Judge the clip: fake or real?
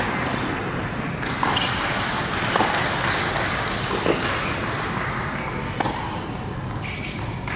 real